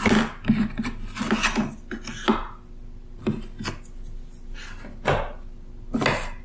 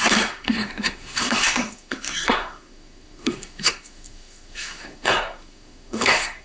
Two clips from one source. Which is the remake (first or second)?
second